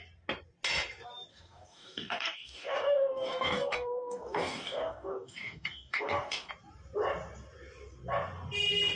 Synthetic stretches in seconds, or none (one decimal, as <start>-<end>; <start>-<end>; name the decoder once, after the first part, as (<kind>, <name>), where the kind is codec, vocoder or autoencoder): 1.3-6.5 (codec, DAC)